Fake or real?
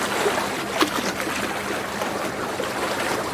real